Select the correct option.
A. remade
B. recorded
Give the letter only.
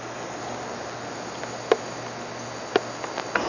B